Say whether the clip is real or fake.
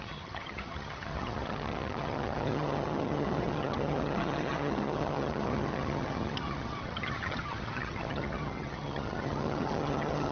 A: fake